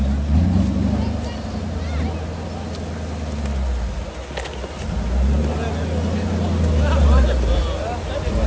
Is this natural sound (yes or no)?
yes